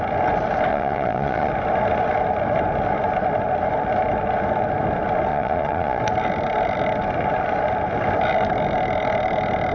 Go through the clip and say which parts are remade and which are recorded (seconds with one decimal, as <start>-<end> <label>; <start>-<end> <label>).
0.0-0.7 recorded; 0.7-1.5 remade; 1.5-5.3 recorded; 5.3-6.0 remade; 6.0-9.7 recorded